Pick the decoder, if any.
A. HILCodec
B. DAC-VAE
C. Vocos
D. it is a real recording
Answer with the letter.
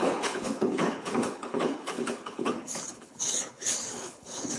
A